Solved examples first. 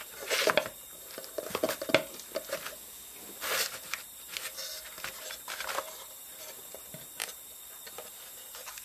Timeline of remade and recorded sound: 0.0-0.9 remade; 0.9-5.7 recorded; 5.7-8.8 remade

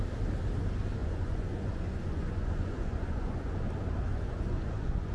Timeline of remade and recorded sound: 0.0-1.0 recorded; 1.0-3.6 remade; 3.6-4.1 recorded; 4.1-5.1 remade

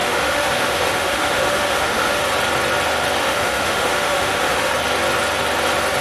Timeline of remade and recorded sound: 0.0-2.2 remade; 2.2-3.2 recorded; 3.2-4.7 remade; 4.7-6.0 recorded

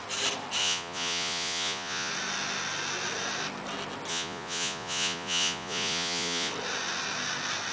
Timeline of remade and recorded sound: 0.0-0.6 recorded; 0.6-2.1 remade; 2.1-4.1 recorded; 4.1-6.5 remade; 6.5-7.7 recorded

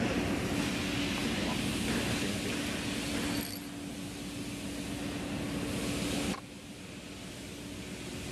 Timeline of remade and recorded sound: 0.0-8.3 recorded

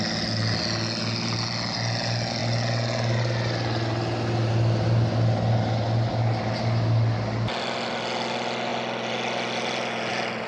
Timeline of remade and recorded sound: 0.0-10.5 recorded

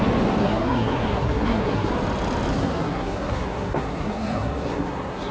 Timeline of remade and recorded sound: 0.0-0.4 recorded; 0.4-1.9 remade; 1.9-2.5 recorded; 2.5-5.3 remade

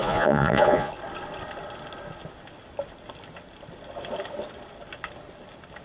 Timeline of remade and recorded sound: 0.0-0.9 remade; 0.9-5.8 recorded